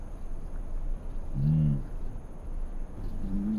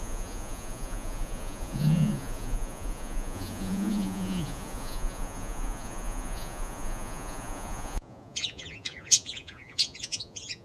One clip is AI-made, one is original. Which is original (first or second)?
first